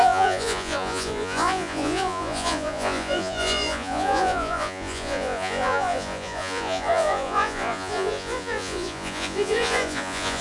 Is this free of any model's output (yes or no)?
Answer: no